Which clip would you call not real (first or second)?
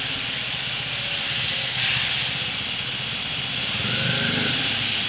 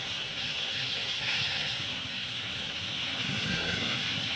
second